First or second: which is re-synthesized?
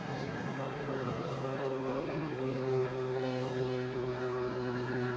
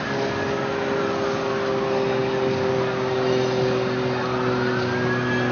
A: first